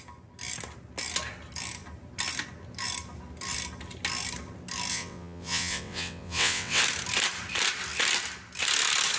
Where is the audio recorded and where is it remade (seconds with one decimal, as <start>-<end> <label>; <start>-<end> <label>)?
0.0-4.9 recorded; 4.9-6.8 remade; 6.8-9.2 recorded